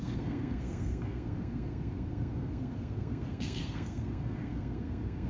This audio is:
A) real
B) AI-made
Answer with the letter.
B